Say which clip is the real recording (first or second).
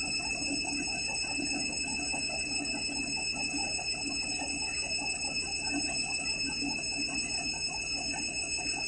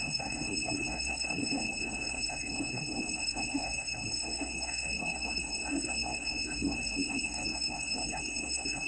first